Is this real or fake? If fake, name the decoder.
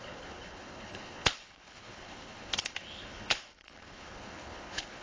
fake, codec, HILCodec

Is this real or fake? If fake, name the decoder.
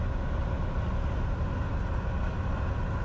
real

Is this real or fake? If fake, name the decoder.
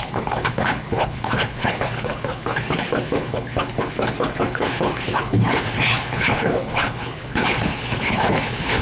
fake, codec, HILCodec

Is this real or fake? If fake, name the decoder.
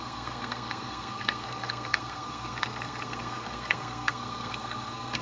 fake, codec, SNAC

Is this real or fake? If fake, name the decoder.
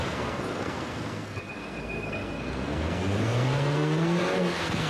fake, codec, SNAC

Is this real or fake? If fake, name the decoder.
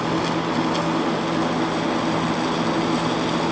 real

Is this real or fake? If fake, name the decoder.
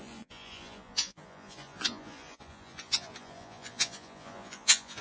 fake, vocoder, Vocos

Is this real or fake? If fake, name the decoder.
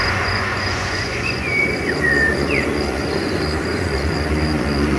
fake, vocoder, Vocos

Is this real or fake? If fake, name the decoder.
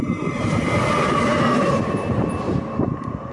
real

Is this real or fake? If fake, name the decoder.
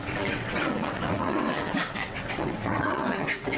fake, vocoder, WaveNeXt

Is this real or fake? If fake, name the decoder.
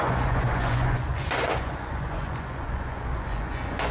fake, vocoder, Vocos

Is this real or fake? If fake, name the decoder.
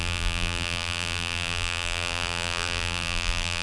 fake, vocoder, BigVGAN v2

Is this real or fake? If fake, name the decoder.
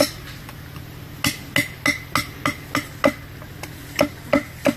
real